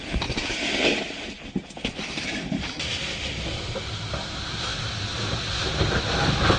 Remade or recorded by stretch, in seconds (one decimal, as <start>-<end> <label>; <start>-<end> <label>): 0.0-6.6 recorded